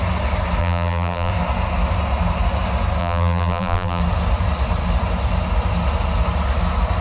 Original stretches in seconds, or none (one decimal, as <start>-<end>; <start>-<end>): 0.0-0.6; 1.3-3.0; 4.0-7.0